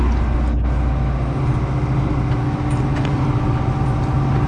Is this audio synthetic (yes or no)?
no